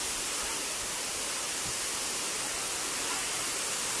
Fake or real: real